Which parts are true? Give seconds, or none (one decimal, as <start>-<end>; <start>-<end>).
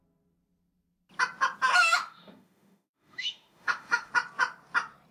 0.0-1.8; 4.1-5.1